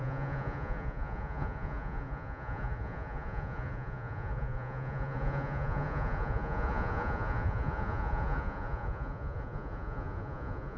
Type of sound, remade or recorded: remade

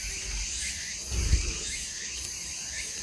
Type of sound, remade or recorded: recorded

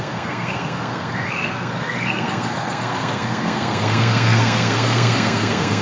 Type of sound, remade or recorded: remade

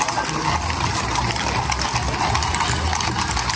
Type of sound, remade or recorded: recorded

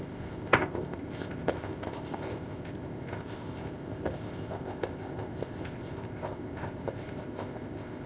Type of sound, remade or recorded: remade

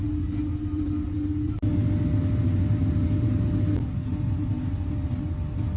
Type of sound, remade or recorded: recorded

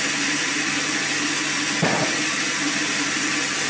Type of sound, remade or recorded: recorded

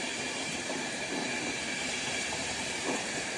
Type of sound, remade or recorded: remade